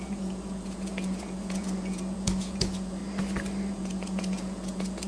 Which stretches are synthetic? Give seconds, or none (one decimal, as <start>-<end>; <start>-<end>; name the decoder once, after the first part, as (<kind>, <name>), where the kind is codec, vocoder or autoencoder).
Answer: 0.0-3.0 (vocoder, Vocos); 3.7-5.1